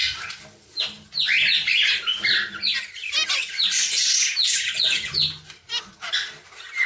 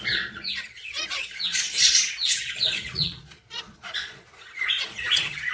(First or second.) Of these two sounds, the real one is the first